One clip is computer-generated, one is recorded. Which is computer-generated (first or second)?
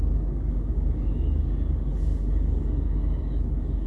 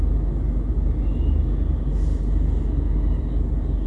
first